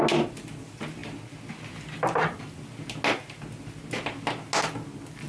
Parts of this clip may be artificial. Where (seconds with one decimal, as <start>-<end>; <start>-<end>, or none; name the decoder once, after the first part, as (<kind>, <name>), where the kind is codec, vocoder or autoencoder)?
none

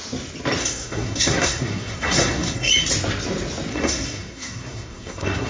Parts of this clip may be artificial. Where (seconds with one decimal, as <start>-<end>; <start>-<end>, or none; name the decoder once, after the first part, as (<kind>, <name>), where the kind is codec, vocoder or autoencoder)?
0.6-2.7 (codec, SNAC); 3.7-5.5